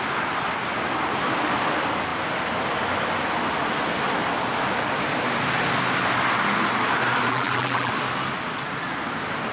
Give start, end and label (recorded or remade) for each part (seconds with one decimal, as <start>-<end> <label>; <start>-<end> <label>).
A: 0.0-7.3 recorded; 7.3-7.9 remade; 7.9-9.5 recorded